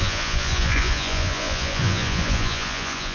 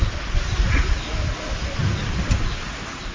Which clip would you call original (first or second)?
second